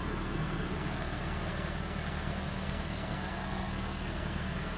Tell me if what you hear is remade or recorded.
remade